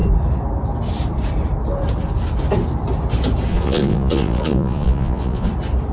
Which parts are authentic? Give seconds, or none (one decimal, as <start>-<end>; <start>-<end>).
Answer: 0.0-3.5; 5.5-5.9